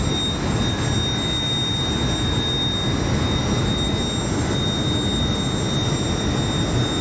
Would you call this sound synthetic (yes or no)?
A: no